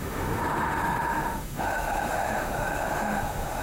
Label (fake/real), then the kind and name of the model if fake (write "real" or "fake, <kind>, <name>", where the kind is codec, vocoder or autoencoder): fake, autoencoder, DAC-VAE